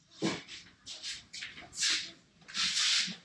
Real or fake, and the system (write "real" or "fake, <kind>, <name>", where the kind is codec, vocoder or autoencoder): real